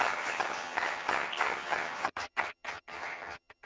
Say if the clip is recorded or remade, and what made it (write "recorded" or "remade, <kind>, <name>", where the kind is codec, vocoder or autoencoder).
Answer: remade, vocoder, HiFi-GAN